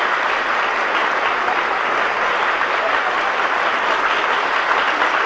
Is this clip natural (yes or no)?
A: yes